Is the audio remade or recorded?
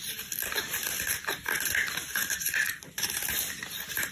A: remade